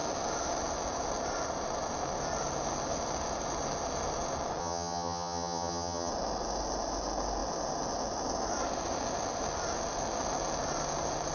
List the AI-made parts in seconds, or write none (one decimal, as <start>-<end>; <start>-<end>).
4.6-6.1